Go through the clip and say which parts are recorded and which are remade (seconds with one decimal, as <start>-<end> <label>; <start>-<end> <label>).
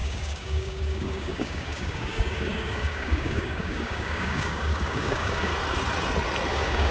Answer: 0.0-5.5 remade; 5.5-6.5 recorded; 6.5-6.9 remade